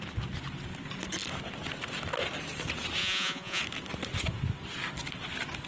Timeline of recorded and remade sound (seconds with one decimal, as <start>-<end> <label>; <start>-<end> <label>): 0.0-3.0 recorded; 3.0-3.6 remade; 3.6-5.7 recorded